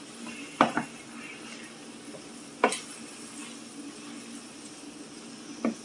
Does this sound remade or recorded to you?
recorded